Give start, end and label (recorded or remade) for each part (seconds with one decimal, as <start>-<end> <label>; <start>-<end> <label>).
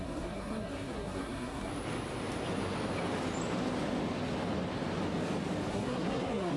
0.0-1.7 remade; 1.7-5.7 recorded; 5.7-6.6 remade